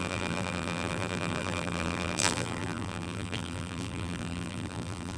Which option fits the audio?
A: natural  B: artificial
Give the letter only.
B